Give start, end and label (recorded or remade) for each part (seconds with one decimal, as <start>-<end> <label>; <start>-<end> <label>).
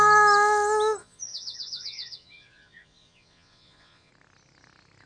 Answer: 0.0-1.0 recorded; 1.0-4.1 remade; 4.1-5.1 recorded